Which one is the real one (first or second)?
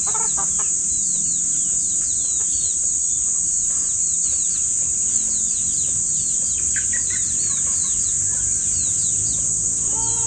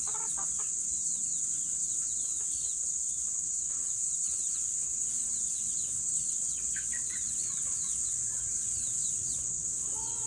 first